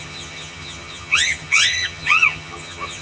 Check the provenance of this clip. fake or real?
fake